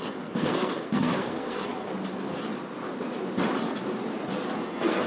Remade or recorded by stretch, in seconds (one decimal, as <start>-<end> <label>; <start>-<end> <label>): 0.0-1.9 remade; 1.9-4.6 recorded; 4.6-5.1 remade